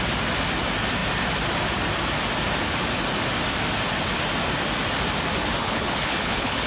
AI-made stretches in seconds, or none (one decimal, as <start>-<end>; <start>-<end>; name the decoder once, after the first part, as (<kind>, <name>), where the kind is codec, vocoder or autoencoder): 5.6-6.7 (codec, HILCodec)